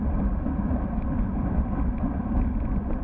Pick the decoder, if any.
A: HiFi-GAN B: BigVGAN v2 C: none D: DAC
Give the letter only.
B